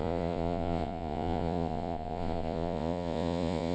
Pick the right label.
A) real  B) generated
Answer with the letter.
B